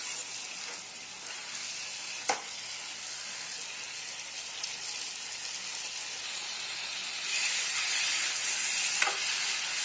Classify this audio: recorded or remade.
recorded